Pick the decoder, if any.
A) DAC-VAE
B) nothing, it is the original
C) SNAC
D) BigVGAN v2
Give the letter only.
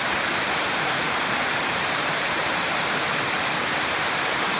D